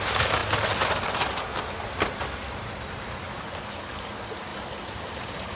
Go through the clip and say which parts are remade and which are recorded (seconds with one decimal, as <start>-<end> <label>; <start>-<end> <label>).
0.0-5.6 recorded